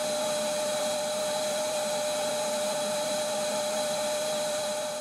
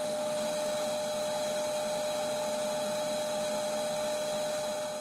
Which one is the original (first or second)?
second